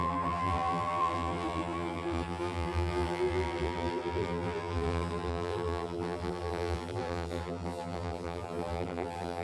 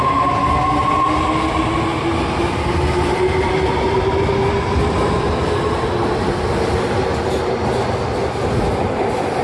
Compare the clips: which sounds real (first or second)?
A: second